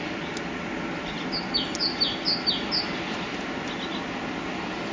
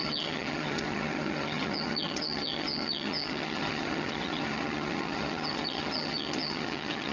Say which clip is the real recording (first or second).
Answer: first